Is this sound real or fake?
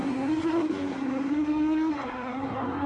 fake